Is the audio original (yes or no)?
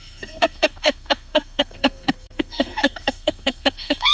no